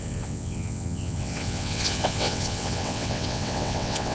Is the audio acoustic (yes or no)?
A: no